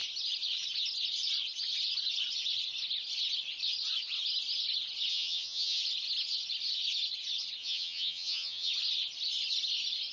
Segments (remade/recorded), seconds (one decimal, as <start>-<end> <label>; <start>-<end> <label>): 0.0-5.1 recorded; 5.1-5.8 remade; 5.8-7.6 recorded; 7.6-8.7 remade; 8.7-10.1 recorded